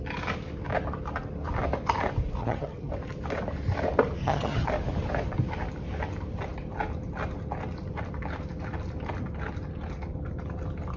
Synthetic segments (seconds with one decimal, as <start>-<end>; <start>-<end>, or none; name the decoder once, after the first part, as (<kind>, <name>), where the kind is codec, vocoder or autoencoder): 2.4-2.9 (vocoder, HiFi-GAN); 4.2-4.7